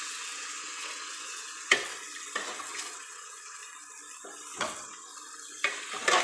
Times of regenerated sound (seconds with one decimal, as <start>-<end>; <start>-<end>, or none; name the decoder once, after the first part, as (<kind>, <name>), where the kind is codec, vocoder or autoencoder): 0.0-1.9 (vocoder, WaveNeXt); 2.6-3.6; 4.5-5.1